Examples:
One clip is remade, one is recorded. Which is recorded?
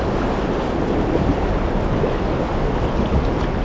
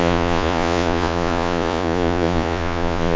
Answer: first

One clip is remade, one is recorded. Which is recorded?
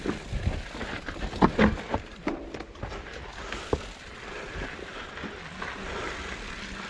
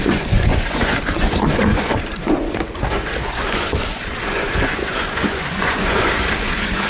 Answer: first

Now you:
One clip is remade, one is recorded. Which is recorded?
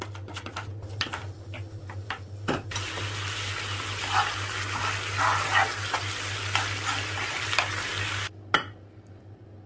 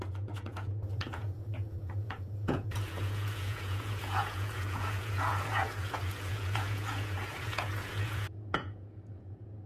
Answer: first